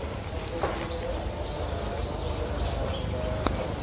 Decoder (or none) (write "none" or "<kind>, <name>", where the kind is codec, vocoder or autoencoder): none